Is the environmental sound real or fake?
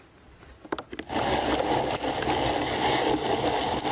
real